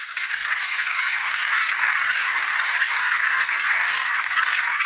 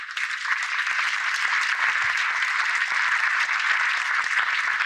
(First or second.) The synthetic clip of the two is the first